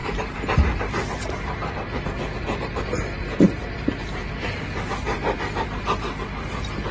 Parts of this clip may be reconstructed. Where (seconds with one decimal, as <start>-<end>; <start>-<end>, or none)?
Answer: 0.0-6.9